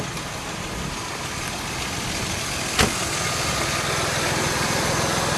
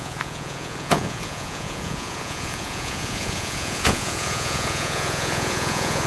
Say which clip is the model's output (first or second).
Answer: second